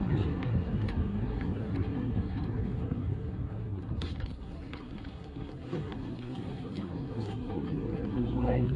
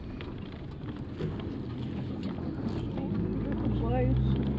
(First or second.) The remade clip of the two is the first